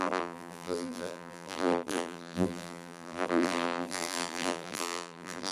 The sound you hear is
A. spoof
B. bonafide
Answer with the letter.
A